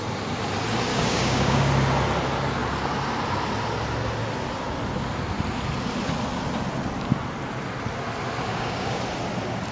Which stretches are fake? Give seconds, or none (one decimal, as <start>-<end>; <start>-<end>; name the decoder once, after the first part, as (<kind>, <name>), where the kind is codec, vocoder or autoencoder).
0.9-1.7 (codec, DAC); 8.5-9.0